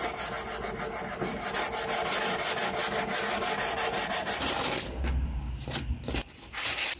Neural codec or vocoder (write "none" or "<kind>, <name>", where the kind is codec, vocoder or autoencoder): none